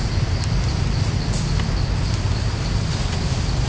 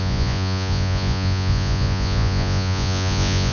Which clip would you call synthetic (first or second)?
second